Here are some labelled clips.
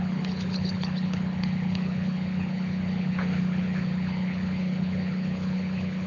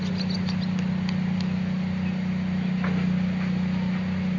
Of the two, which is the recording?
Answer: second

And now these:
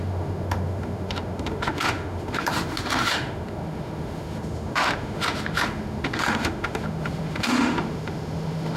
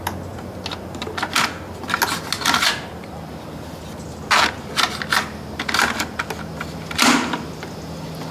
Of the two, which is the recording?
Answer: second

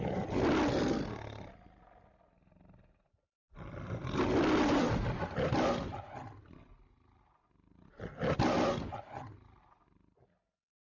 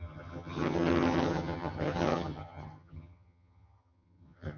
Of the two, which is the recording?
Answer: first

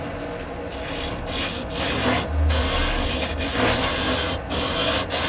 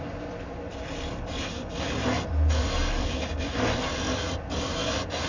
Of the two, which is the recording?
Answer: first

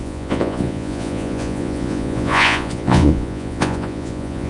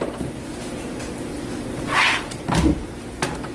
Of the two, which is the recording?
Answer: second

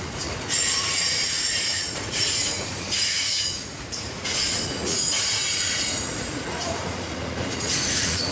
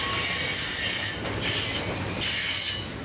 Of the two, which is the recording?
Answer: second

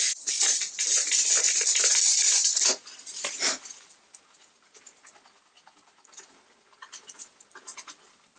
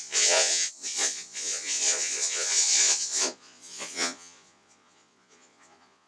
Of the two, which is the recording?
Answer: first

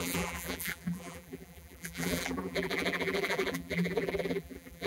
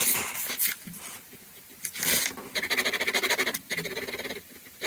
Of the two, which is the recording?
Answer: second